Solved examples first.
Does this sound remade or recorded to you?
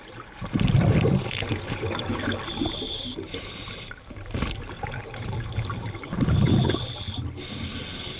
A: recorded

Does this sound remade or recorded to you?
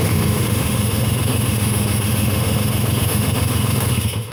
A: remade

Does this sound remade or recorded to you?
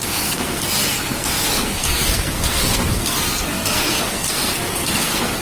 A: remade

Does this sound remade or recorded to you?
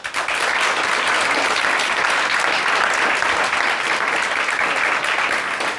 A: recorded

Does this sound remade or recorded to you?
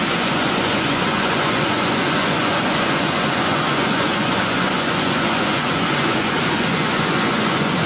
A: remade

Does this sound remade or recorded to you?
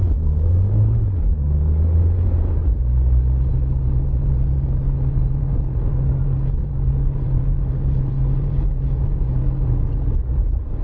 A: recorded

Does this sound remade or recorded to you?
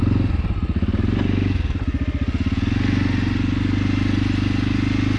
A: recorded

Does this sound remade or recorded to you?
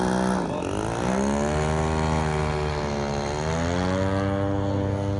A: recorded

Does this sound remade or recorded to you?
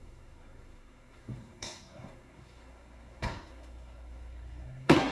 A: remade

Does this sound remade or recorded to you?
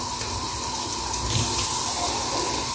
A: recorded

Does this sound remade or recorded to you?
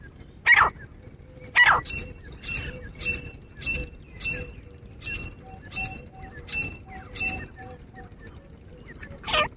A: recorded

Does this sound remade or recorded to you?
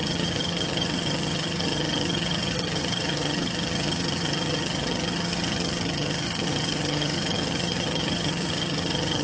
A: remade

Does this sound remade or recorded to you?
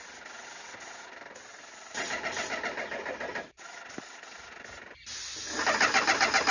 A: recorded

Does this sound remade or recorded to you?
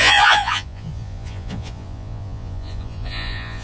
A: remade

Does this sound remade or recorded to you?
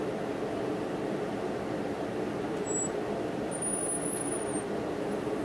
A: recorded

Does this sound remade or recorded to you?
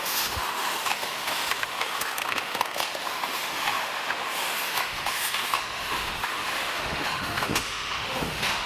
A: remade